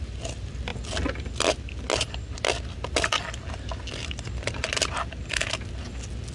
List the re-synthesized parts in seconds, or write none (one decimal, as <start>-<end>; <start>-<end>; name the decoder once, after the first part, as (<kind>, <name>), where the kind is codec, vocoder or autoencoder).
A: none

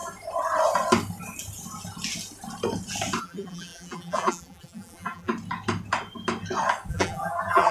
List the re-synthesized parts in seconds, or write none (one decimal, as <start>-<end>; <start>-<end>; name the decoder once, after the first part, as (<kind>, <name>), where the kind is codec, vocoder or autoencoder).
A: 3.2-5.3 (vocoder, BigVGAN v2); 6.9-7.7